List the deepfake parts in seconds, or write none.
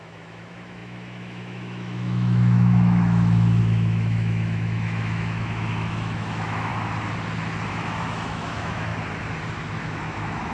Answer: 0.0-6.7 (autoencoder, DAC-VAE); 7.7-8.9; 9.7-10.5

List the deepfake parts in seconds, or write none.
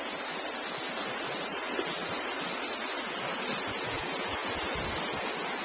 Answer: none